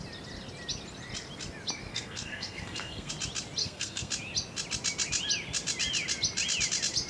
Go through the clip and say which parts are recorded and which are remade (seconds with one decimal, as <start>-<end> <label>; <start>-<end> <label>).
0.0-1.9 recorded; 1.9-3.1 remade; 3.1-3.6 recorded; 3.6-4.1 remade; 4.1-7.1 recorded

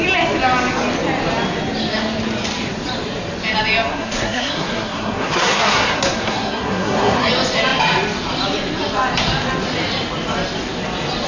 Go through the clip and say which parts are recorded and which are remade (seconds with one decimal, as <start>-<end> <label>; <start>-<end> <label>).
0.0-3.9 recorded; 3.9-7.3 remade; 7.3-11.3 recorded